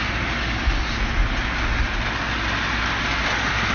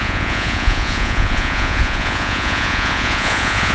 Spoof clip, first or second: second